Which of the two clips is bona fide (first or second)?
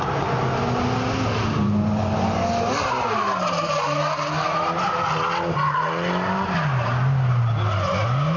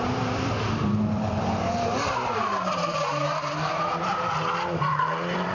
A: first